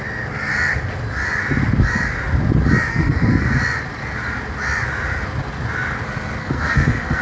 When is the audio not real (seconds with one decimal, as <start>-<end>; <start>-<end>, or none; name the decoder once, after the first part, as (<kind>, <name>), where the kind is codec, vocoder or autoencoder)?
2.9-3.6 (codec, SNAC); 6.4-7.2